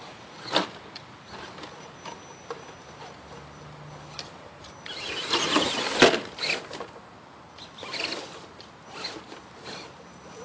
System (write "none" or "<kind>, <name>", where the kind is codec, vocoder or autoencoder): none